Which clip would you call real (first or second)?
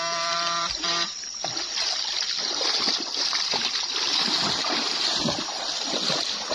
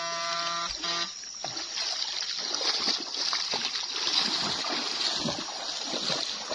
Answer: second